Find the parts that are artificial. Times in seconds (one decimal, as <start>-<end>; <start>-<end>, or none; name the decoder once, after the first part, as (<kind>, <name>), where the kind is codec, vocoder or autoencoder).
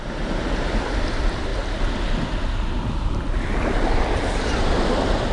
0.0-1.5 (vocoder, BigVGAN v2); 4.6-5.3